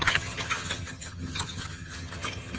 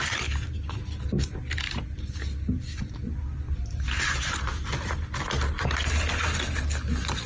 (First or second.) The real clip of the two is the second